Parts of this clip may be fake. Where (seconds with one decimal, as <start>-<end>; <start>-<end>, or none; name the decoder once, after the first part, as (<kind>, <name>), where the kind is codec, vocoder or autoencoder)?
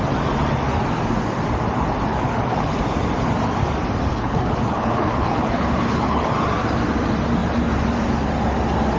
2.1-2.8 (codec, HILCodec); 4.1-6.3